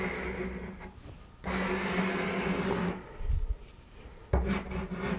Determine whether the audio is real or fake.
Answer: real